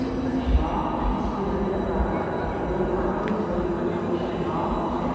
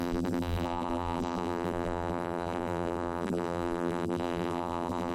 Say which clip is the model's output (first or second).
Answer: second